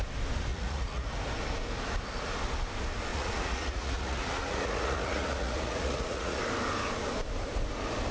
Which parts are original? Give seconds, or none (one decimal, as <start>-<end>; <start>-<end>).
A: 0.0-0.5; 1.0-3.1; 6.4-8.1